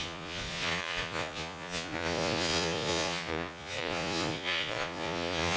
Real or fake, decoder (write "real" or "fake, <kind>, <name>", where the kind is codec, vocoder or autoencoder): fake, vocoder, Vocos